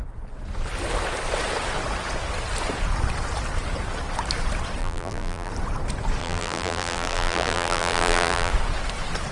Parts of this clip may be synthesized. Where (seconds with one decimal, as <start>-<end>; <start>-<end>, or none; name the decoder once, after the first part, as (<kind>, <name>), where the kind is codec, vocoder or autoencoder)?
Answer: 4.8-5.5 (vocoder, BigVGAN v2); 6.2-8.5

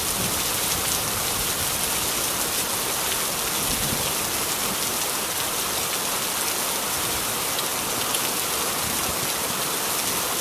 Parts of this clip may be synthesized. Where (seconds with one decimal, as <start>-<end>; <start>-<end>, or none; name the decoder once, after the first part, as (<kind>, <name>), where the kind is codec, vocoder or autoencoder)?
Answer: none

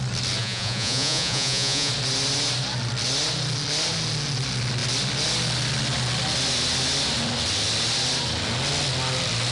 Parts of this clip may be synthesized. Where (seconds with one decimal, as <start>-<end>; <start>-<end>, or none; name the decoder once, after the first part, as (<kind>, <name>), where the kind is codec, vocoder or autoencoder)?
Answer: 0.4-1.9 (vocoder, Vocos)

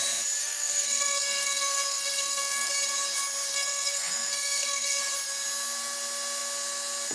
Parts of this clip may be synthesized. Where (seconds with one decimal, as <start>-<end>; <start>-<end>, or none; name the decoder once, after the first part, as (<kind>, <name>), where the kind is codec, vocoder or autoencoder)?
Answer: 0.4-2.7 (codec, SNAC); 3.5-5.0

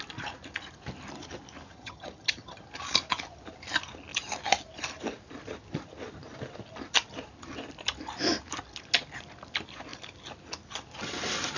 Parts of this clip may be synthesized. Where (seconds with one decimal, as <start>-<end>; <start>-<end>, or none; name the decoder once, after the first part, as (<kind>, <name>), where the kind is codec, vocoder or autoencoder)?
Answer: 1.7-2.6 (vocoder, HiFi-GAN)